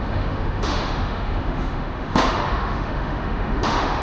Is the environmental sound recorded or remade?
remade